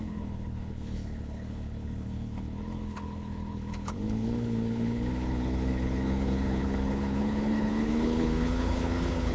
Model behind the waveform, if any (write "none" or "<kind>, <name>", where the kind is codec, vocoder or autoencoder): codec, HILCodec